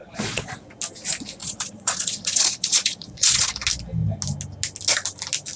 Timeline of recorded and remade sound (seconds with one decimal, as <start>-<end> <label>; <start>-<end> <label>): 0.0-0.5 remade; 0.5-1.4 recorded; 1.4-3.5 remade; 3.5-5.6 recorded